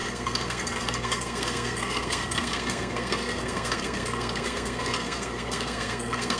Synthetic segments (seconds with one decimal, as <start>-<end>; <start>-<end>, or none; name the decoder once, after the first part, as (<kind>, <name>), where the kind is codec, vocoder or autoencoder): 0.0-6.4 (codec, SNAC)